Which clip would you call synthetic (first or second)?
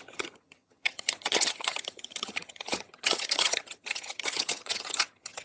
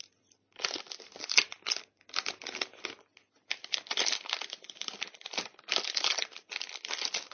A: first